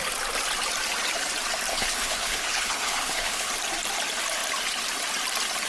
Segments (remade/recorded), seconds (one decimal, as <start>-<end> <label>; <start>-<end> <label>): 0.0-1.7 recorded; 1.7-3.5 remade; 3.5-5.7 recorded